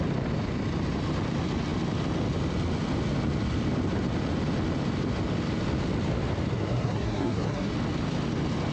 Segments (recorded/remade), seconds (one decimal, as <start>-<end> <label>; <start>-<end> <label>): 0.0-6.5 recorded; 6.5-7.7 remade; 7.7-8.7 recorded